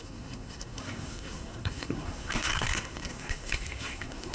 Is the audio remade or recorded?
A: remade